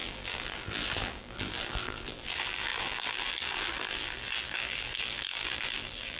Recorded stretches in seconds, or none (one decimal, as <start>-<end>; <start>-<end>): none